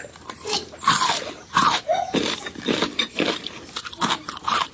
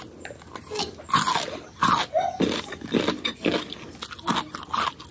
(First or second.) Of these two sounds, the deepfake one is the first